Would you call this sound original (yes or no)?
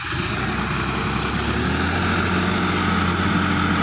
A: yes